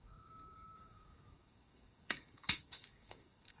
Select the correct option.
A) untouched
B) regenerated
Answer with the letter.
B